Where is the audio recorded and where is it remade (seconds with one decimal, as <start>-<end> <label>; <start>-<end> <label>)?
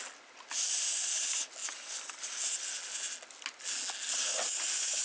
0.0-1.6 recorded; 1.6-2.7 remade; 2.7-5.0 recorded